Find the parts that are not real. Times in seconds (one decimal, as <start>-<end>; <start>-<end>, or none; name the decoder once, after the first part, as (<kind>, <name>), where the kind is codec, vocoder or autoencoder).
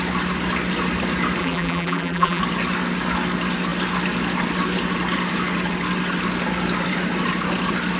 1.4-2.4 (vocoder, BigVGAN v2)